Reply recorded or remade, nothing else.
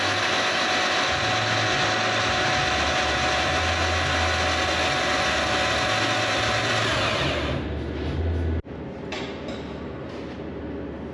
recorded